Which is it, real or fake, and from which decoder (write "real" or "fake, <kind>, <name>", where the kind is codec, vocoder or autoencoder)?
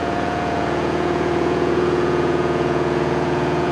fake, vocoder, Vocos